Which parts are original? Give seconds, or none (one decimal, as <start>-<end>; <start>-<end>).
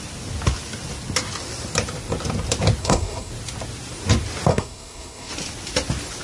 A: 0.0-2.8; 3.3-4.5; 5.3-6.2